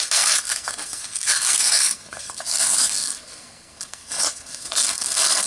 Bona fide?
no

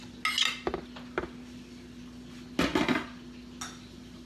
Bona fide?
yes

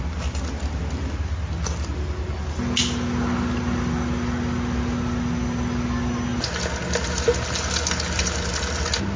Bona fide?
yes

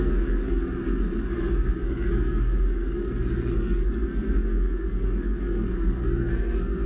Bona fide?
no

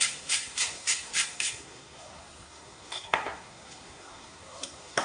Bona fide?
no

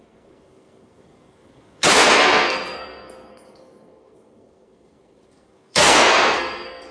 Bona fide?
no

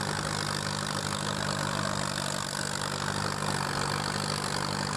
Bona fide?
yes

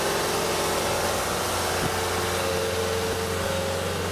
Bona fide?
yes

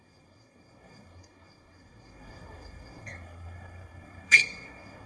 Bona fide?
no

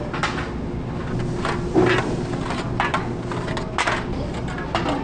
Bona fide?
yes